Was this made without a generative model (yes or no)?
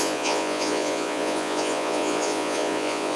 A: no